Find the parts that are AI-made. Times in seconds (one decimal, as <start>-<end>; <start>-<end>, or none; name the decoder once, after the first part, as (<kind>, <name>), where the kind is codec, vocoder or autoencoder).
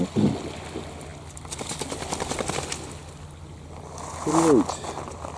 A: none